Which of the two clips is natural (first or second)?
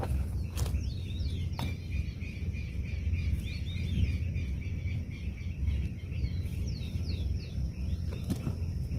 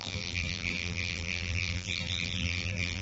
first